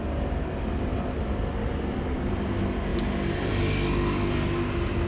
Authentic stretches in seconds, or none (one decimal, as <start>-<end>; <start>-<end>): 0.0-2.9; 3.5-5.1